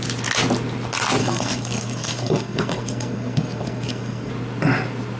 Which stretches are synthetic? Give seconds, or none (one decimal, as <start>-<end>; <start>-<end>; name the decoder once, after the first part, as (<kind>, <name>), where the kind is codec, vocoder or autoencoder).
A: 1.2-4.3 (codec, SNAC)